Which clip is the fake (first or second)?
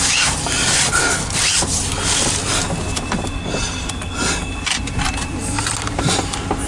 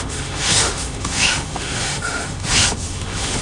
second